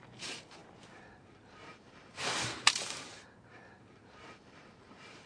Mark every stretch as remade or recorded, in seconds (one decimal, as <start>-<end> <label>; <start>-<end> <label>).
0.0-5.3 remade